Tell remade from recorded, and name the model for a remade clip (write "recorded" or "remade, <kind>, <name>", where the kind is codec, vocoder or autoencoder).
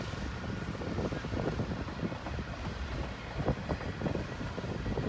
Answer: recorded